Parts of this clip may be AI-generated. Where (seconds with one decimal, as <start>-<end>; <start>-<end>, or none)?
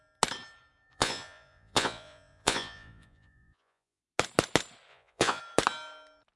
0.9-4.0; 4.9-5.4